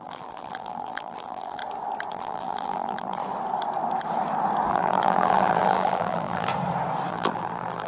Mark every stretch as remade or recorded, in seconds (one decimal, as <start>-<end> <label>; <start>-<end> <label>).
0.0-1.6 remade; 1.6-2.1 recorded; 2.1-3.2 remade; 3.2-4.7 recorded; 4.7-6.5 remade; 6.5-7.1 recorded; 7.1-7.9 remade